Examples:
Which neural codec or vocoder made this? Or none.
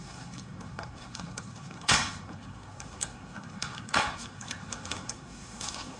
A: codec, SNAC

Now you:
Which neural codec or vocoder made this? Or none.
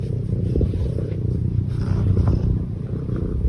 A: vocoder, BigVGAN v2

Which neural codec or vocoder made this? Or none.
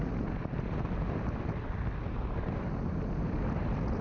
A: none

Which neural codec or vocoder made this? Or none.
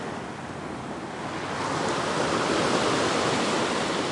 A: none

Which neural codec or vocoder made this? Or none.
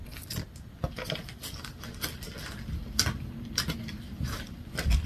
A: none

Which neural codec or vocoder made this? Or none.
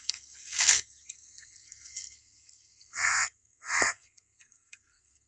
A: codec, SNAC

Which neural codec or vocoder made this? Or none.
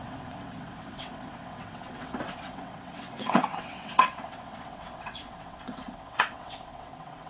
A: vocoder, WaveNeXt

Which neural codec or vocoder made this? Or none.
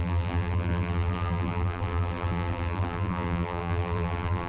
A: vocoder, BigVGAN v2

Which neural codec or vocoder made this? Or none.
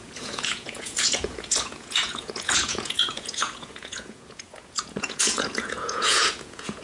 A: vocoder, Vocos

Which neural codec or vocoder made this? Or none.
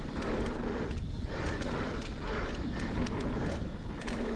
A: none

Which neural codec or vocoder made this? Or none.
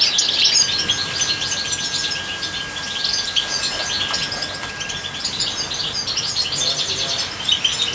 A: none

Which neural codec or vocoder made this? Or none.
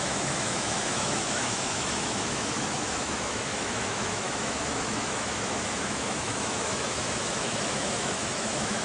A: autoencoder, DAC-VAE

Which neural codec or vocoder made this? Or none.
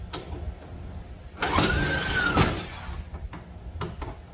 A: none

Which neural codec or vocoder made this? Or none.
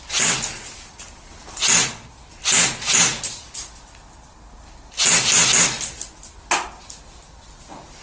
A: none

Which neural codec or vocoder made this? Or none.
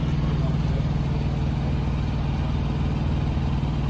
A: none